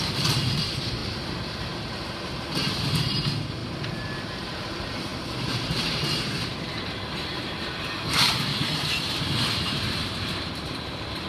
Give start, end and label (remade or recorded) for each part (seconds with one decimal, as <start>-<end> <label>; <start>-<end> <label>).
0.0-1.0 remade; 1.0-1.6 recorded; 1.6-3.6 remade; 3.6-4.3 recorded; 4.3-8.5 remade; 8.5-9.6 recorded; 9.6-11.3 remade

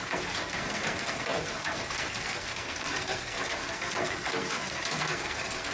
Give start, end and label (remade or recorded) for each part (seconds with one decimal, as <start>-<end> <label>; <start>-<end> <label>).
0.0-5.7 remade

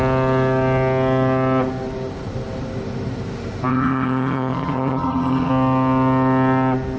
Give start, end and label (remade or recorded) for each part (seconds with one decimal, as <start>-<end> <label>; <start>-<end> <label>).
0.0-3.7 recorded; 3.7-5.5 remade; 5.5-7.0 recorded

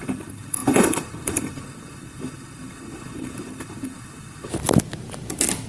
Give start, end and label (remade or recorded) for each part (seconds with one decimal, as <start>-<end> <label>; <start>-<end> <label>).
0.0-4.5 remade; 4.5-5.7 recorded

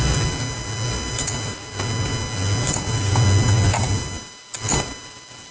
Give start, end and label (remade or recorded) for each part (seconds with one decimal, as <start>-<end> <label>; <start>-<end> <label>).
0.0-5.5 recorded

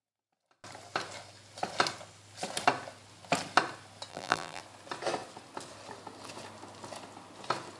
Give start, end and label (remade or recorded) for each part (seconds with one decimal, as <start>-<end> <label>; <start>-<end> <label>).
0.0-4.1 recorded; 4.1-4.6 remade; 4.6-7.8 recorded

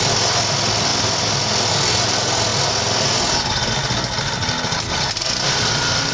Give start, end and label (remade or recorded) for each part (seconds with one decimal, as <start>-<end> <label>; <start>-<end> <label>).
0.0-6.1 recorded